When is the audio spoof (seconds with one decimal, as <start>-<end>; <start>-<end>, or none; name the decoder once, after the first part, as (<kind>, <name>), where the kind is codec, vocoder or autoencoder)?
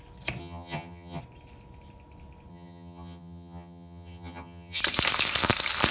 0.4-1.2 (vocoder, HiFi-GAN); 2.5-4.8